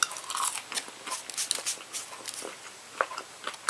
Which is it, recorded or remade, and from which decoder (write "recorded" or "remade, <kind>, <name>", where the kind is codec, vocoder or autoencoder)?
recorded